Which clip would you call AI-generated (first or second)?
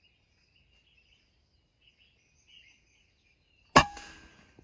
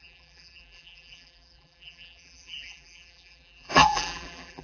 second